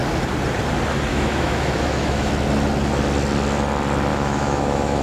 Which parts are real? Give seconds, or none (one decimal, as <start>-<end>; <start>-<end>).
0.0-1.1; 2.3-4.1